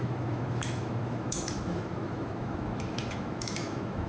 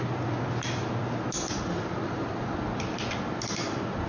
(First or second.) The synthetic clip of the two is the first